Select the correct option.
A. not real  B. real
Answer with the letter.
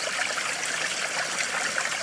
B